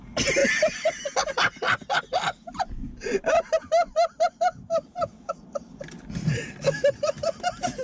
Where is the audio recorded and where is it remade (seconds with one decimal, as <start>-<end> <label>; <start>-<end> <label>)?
0.0-7.8 recorded

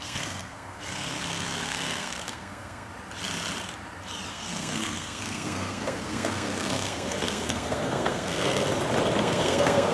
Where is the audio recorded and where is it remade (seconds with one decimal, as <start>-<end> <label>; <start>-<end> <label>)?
0.0-2.9 remade; 2.9-4.3 recorded; 4.3-8.6 remade; 8.6-9.2 recorded; 9.2-9.9 remade